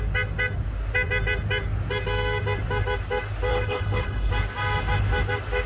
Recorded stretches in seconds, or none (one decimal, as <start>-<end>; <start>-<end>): 0.0-3.5; 4.3-5.7